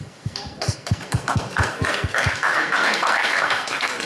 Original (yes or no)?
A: no